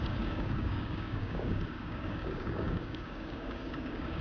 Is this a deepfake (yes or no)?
yes